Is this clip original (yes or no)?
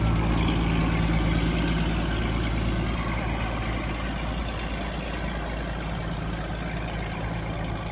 yes